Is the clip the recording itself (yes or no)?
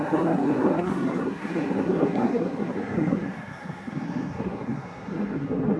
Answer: no